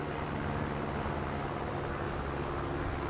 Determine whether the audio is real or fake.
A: real